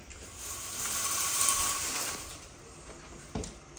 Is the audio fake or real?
real